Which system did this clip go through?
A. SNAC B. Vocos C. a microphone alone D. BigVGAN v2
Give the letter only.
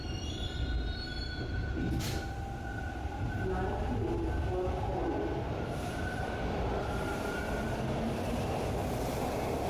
C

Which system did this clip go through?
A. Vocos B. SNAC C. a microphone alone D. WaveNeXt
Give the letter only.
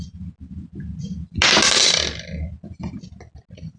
C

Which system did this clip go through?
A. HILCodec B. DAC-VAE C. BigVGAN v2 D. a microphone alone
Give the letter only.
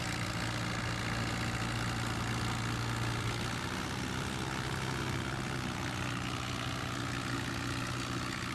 D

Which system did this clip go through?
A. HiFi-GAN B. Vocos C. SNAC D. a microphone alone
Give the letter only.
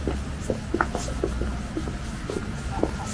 D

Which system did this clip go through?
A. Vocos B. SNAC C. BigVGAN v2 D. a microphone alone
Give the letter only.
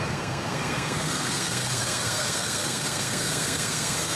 B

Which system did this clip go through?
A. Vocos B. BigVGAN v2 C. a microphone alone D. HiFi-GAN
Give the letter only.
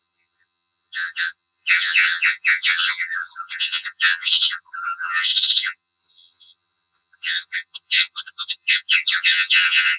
D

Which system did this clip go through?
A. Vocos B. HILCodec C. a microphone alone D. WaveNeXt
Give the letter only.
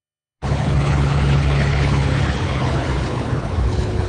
B